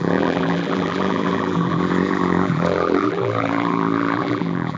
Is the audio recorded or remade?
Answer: remade